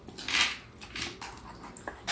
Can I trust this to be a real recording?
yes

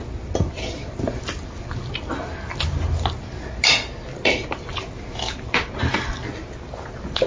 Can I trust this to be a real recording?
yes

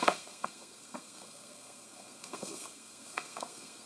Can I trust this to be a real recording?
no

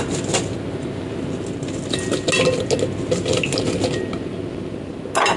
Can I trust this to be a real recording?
yes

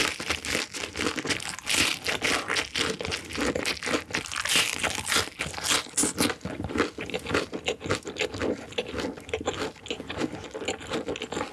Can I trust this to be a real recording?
yes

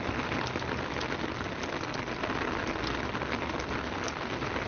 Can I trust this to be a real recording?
yes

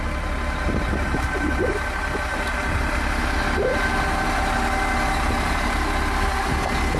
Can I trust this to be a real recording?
yes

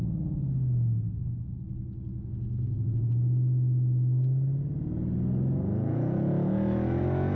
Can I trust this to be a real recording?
yes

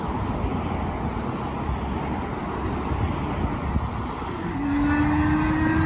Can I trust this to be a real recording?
yes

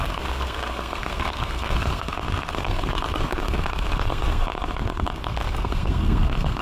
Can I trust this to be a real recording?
no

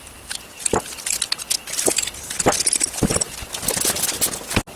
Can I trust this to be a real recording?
yes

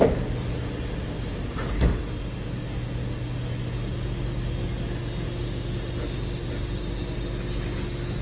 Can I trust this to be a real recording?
yes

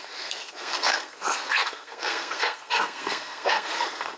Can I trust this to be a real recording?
no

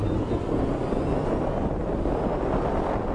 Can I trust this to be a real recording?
yes